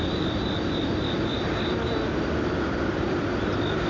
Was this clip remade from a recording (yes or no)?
no